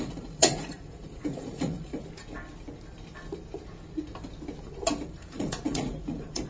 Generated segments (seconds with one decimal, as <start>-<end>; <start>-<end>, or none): 0.0-1.9; 5.1-6.5